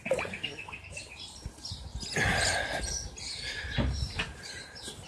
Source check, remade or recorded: recorded